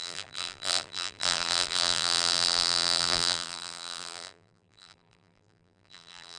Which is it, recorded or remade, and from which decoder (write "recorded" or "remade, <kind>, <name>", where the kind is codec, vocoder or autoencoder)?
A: remade, vocoder, BigVGAN v2